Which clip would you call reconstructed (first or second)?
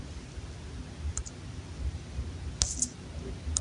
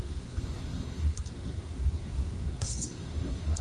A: second